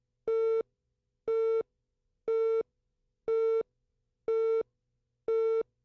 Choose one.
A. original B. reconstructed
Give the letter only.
A